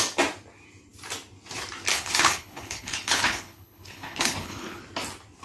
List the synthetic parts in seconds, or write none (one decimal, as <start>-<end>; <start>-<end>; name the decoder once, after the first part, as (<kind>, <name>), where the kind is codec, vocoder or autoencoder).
1.9-4.8 (codec, HILCodec)